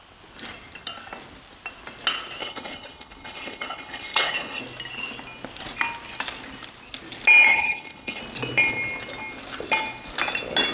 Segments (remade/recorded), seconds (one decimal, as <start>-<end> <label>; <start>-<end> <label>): 0.0-2.4 recorded; 2.4-4.6 remade; 4.6-7.5 recorded; 7.5-8.2 remade; 8.2-10.7 recorded